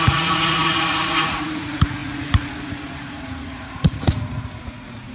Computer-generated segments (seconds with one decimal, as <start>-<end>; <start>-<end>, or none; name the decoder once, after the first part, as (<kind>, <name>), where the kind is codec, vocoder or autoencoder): 0.0-5.1 (vocoder, Vocos)